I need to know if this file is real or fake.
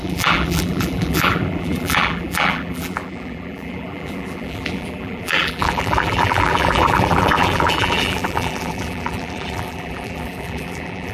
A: fake